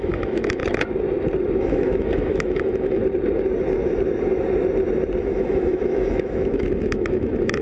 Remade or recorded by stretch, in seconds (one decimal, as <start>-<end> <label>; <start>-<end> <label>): 0.0-0.6 remade; 0.6-1.6 recorded; 1.6-3.0 remade; 3.0-5.2 recorded; 5.2-7.6 remade